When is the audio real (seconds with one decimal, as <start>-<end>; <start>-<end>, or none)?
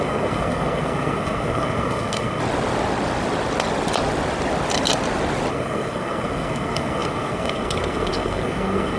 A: 2.4-5.5